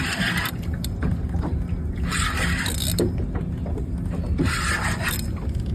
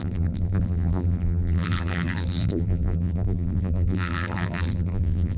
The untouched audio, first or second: first